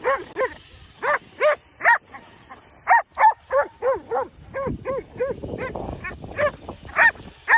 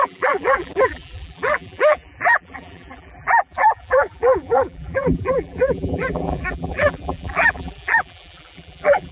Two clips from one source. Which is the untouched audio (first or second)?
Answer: first